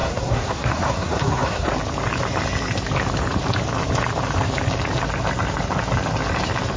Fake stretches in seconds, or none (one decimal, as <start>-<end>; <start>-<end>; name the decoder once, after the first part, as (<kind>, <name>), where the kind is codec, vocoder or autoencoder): 0.0-1.7 (codec, SNAC)

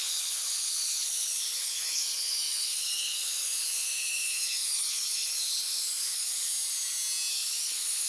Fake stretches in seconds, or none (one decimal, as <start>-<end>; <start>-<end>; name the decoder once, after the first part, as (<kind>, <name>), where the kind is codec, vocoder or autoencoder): 0.0-6.5 (codec, HILCodec); 7.3-8.1